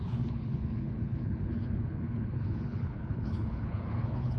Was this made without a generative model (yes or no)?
no